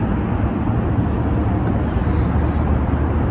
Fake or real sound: real